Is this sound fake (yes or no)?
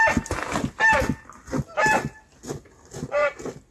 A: no